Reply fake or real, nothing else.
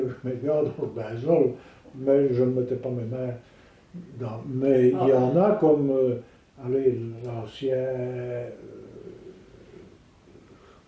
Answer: real